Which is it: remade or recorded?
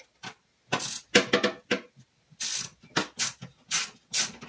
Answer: recorded